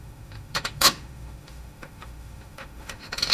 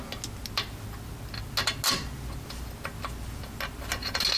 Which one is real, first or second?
second